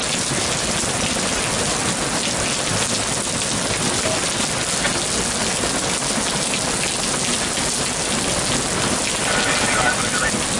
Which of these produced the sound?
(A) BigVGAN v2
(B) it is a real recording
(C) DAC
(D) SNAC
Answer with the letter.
B